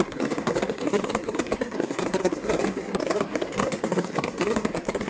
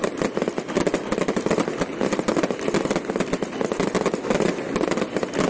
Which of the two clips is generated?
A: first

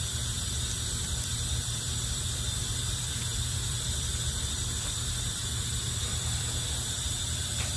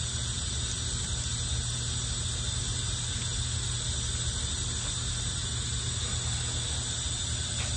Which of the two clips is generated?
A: first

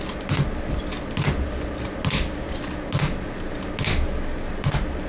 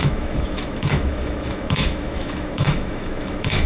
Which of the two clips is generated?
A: second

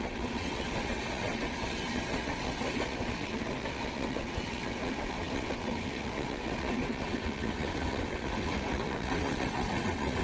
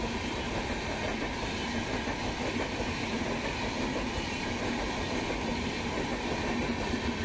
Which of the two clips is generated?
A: first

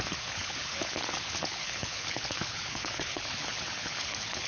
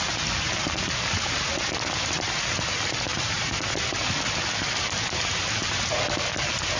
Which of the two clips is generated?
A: first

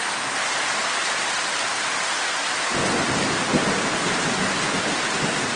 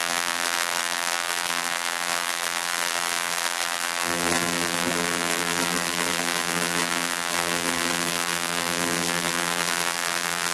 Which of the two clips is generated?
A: second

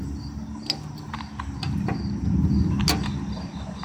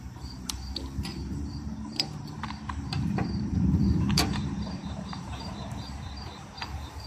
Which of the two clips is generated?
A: second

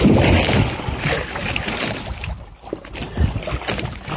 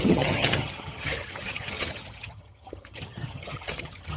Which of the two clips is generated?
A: second